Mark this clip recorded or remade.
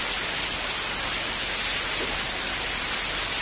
recorded